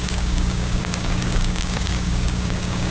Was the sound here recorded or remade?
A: remade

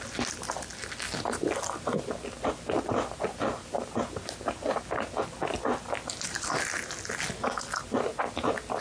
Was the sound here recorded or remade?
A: recorded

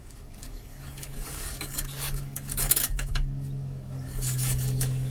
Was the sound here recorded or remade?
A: remade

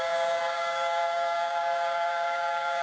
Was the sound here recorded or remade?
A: remade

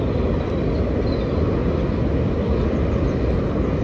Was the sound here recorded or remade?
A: recorded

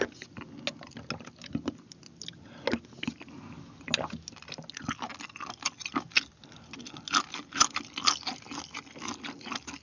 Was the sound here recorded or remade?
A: recorded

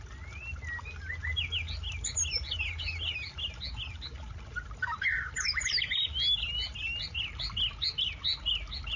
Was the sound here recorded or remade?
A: recorded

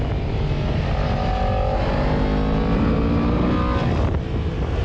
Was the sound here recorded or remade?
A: recorded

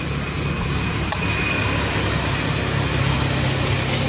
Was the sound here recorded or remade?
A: recorded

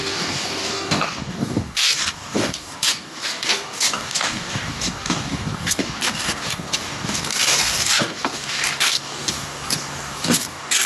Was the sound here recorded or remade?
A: remade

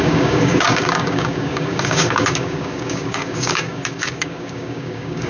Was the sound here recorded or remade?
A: remade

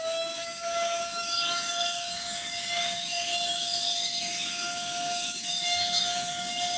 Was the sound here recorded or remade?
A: remade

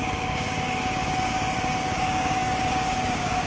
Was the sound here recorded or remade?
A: remade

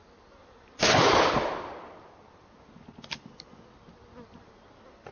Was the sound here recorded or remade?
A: recorded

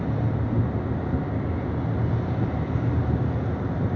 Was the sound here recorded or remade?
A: recorded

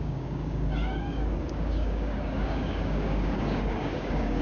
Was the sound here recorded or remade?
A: remade